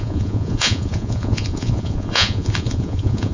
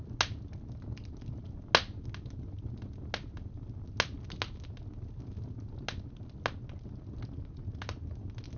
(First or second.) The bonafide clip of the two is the second